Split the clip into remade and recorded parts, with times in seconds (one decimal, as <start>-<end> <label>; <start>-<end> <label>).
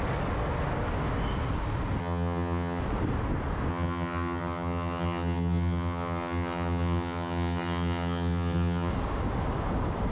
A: 0.0-2.0 recorded; 2.0-2.8 remade; 2.8-3.7 recorded; 3.7-8.9 remade; 8.9-10.1 recorded